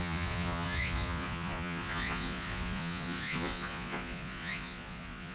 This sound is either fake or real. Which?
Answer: fake